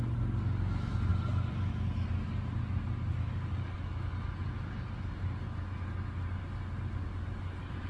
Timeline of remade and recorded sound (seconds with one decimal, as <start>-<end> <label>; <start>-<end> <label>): 0.0-7.9 recorded